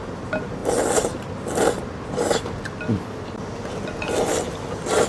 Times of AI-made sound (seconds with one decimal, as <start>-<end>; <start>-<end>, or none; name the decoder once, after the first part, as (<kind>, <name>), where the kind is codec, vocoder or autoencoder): none